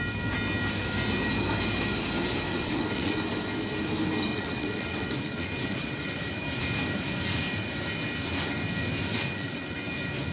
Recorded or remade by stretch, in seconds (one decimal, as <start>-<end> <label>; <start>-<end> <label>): 0.0-2.5 recorded; 2.5-3.2 remade; 3.2-4.3 recorded; 4.3-6.2 remade; 6.2-9.1 recorded; 9.1-9.9 remade; 9.9-10.3 recorded

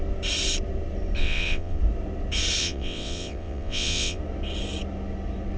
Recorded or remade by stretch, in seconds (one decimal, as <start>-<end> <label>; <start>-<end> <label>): 0.0-1.2 recorded; 1.2-1.8 remade; 1.8-2.6 recorded; 2.6-4.2 remade; 4.2-5.6 recorded